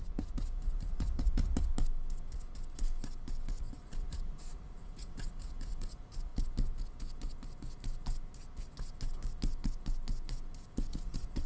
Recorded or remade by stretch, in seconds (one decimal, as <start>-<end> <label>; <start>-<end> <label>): 0.0-1.7 remade; 1.7-3.8 recorded; 3.8-6.3 remade; 6.3-10.9 recorded; 10.9-11.5 remade